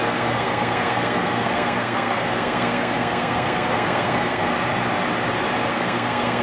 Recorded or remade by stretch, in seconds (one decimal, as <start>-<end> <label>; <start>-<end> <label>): 0.0-4.5 remade; 4.5-5.7 recorded; 5.7-6.4 remade